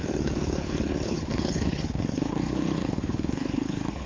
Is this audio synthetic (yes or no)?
yes